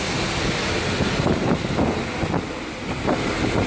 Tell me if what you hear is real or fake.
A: real